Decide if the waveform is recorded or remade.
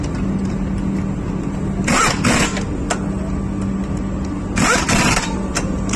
recorded